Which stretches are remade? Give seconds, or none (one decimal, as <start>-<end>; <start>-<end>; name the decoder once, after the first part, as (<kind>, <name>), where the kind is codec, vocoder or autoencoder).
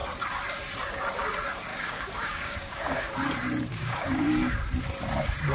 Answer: 1.7-3.1 (codec, DAC); 3.7-4.3